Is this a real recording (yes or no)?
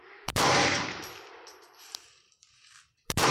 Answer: no